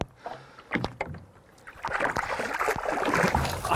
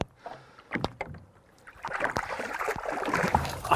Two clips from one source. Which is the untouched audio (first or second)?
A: first